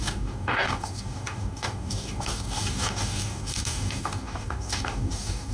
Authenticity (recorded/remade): remade